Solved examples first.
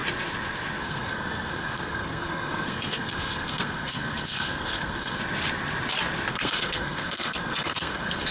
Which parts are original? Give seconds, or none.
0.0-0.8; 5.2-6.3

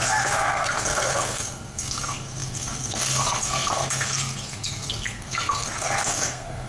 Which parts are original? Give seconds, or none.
none

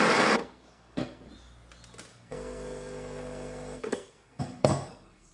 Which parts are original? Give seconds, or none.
0.0-0.4; 1.3-2.1

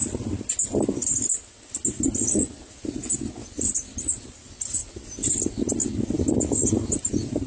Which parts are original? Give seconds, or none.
0.0-7.5